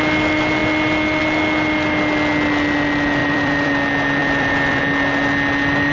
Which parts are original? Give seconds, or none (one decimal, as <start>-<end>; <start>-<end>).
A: 0.0-3.2; 3.7-4.2; 4.8-5.9